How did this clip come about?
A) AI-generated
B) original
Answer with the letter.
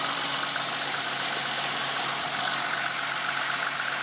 B